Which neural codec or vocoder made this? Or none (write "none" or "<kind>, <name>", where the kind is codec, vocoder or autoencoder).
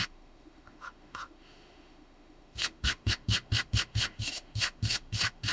autoencoder, DAC-VAE